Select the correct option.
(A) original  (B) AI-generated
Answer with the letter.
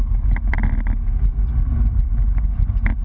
A